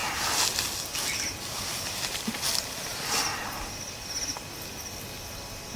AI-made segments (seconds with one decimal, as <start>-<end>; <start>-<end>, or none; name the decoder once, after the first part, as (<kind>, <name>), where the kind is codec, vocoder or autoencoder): none